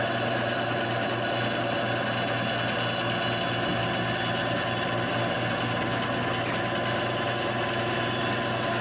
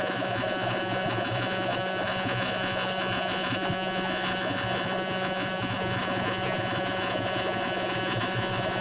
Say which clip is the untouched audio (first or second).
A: first